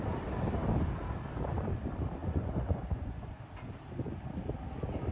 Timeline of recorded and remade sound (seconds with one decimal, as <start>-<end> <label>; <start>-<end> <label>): 0.0-2.2 recorded; 2.2-3.4 remade; 3.4-5.1 recorded